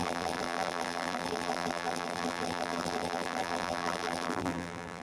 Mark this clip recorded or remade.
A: remade